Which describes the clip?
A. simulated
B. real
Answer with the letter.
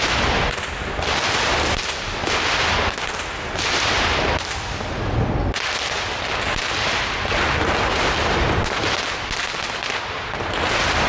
B